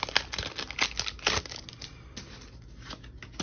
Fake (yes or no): no